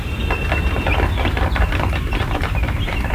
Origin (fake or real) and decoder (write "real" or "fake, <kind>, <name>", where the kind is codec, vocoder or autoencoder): fake, vocoder, BigVGAN v2